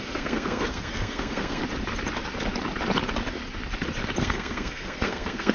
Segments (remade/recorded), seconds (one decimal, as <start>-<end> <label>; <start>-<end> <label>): 0.0-1.6 remade; 1.6-4.2 recorded; 4.2-5.5 remade